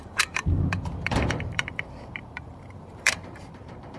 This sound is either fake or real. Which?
fake